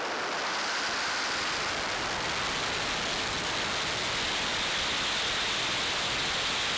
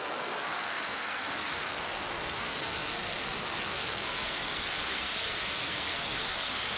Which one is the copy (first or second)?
second